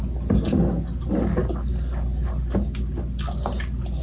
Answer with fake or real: real